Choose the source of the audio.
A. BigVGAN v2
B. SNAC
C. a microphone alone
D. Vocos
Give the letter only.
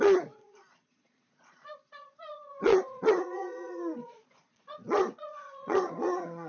D